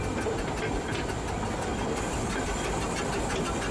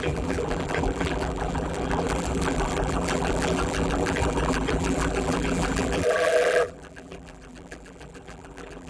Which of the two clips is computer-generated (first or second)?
second